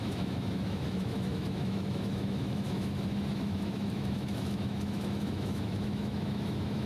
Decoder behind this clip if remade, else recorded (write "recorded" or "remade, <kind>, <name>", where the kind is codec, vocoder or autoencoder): remade, autoencoder, DAC-VAE